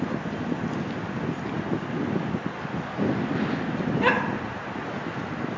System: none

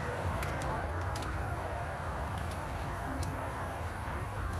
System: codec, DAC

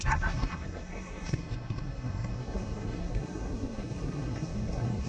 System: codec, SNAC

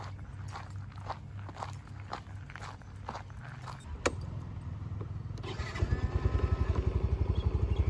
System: none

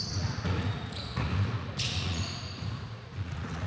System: vocoder, Vocos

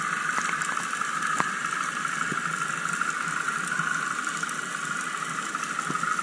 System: none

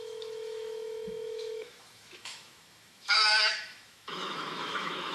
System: autoencoder, DAC-VAE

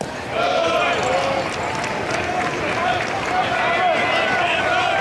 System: none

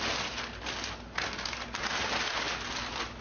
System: none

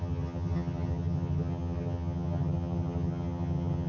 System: vocoder, HiFi-GAN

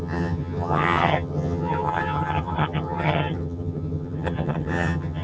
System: vocoder, HiFi-GAN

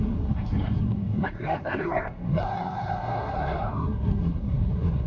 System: codec, SNAC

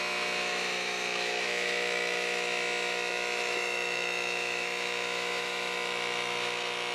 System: autoencoder, DAC-VAE